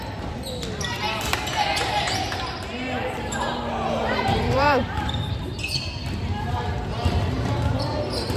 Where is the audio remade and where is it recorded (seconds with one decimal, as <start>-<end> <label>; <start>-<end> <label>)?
0.0-4.0 recorded; 4.0-5.4 remade; 5.4-8.4 recorded